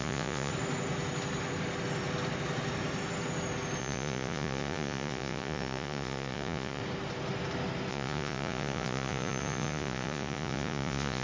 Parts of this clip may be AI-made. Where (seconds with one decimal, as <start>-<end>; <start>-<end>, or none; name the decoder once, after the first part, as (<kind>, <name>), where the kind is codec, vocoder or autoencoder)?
0.0-0.5 (vocoder, Vocos); 3.8-6.8; 7.9-11.2